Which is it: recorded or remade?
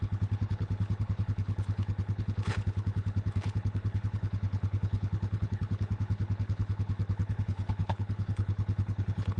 remade